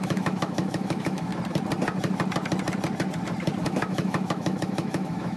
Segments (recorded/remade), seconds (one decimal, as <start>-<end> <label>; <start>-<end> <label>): 0.0-1.3 remade; 1.3-3.6 recorded; 3.6-5.4 remade